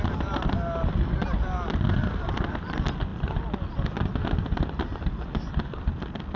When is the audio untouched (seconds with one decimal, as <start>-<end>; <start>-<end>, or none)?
0.0-6.4

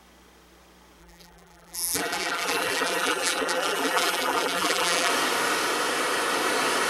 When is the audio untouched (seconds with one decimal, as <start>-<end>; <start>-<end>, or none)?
0.0-1.0; 5.1-6.9

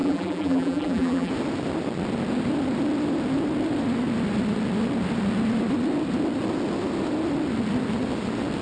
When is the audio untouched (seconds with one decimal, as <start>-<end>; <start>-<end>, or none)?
1.3-8.6

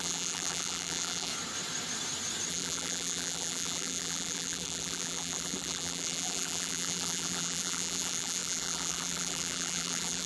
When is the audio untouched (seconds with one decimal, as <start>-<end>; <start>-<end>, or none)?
1.3-2.5

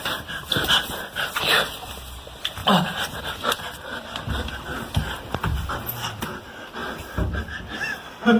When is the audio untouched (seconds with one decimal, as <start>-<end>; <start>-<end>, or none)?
0.0-2.6; 3.2-8.4